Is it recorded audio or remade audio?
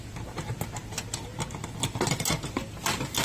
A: recorded